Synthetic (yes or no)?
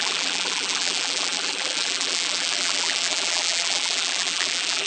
yes